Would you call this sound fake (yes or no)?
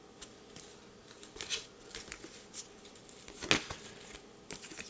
no